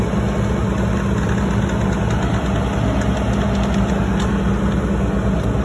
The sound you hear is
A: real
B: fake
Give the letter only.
A